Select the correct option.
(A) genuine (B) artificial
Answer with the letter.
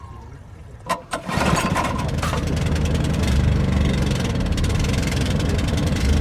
B